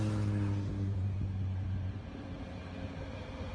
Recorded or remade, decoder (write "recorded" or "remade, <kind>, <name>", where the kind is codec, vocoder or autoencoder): recorded